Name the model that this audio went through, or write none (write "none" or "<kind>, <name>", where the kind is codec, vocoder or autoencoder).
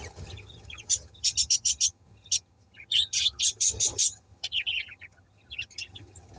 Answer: vocoder, HiFi-GAN